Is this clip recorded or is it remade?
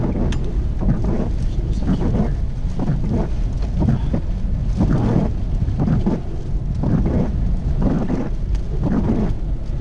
recorded